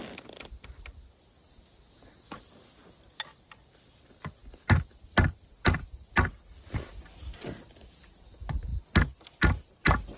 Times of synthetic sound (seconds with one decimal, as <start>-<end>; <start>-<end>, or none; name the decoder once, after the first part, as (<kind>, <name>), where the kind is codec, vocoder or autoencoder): none